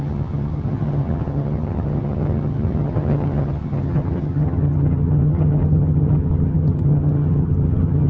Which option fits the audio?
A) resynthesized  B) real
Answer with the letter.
A